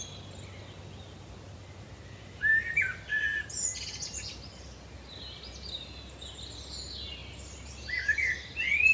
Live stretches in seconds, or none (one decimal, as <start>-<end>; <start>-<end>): 0.0-8.9